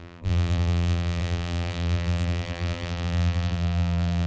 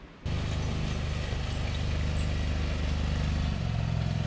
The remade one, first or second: first